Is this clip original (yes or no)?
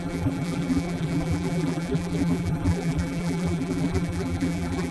no